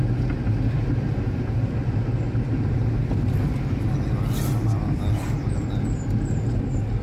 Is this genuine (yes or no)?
yes